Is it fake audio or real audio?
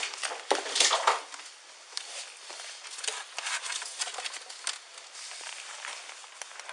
real